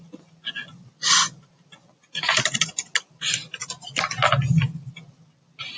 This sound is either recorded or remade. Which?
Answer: recorded